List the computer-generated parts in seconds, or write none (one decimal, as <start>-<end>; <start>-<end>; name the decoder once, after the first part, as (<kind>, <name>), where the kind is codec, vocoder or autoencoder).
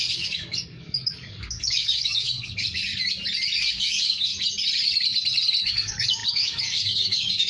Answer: 0.0-2.9 (codec, DAC); 3.7-4.3; 5.6-7.5